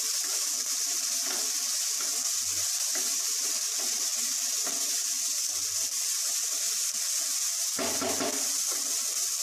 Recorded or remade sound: recorded